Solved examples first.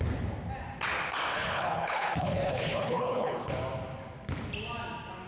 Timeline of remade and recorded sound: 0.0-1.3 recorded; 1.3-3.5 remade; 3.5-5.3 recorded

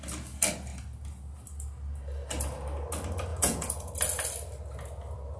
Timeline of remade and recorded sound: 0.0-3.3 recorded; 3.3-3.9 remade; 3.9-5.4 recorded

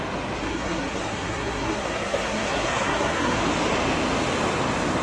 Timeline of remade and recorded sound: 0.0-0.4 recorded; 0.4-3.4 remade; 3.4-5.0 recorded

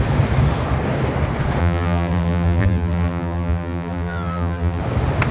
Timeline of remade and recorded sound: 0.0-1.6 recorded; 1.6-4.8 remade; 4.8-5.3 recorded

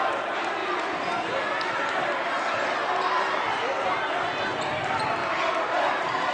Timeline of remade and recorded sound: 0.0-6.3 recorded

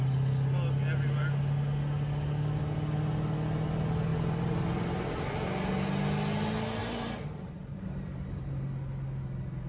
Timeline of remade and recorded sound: 0.0-4.1 recorded; 4.1-5.3 remade; 5.3-6.8 recorded; 6.8-8.6 remade; 8.6-9.7 recorded

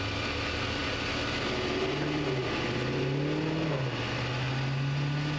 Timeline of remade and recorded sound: 0.0-5.4 recorded

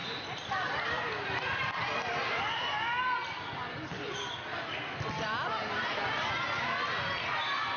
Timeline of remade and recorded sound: 0.0-7.8 recorded